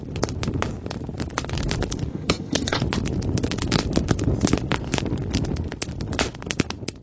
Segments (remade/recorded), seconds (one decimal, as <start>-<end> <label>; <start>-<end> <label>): 0.0-2.1 recorded; 2.1-2.8 remade; 2.8-7.0 recorded